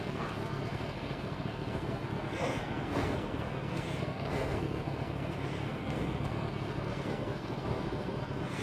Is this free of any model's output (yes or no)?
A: no